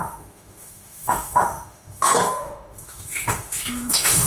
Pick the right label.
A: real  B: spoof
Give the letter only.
B